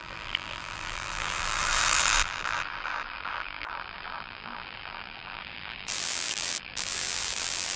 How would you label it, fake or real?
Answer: fake